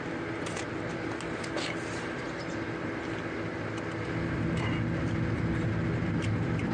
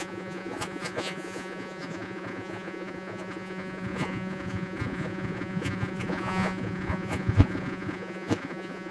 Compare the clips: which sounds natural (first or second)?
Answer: first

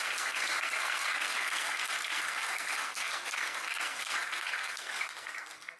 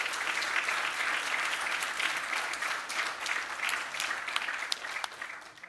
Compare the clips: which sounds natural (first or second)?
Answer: second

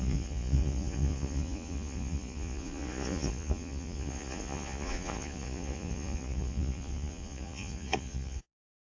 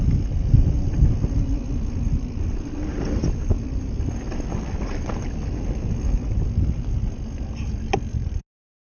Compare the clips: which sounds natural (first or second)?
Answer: second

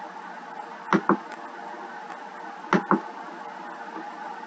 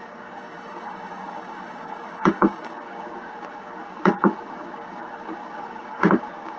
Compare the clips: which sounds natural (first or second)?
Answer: first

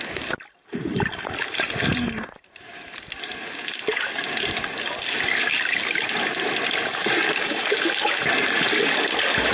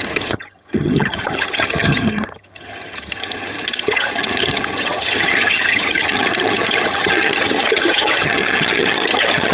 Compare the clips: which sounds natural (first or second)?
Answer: first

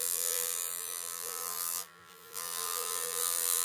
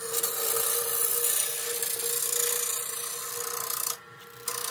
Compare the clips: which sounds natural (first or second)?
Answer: second